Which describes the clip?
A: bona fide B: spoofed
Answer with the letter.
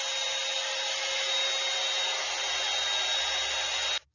A